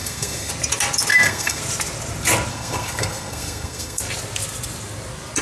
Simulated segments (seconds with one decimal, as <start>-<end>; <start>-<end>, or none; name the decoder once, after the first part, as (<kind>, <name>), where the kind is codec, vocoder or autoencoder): 0.0-0.5 (codec, SNAC); 1.1-1.6; 2.5-4.0